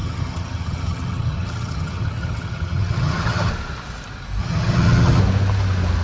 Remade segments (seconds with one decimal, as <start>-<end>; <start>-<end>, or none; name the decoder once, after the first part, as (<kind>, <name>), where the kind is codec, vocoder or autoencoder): 0.0-3.5 (vocoder, HiFi-GAN); 4.4-5.2